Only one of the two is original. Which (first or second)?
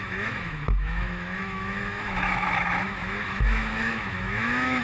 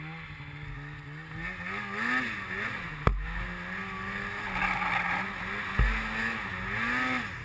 second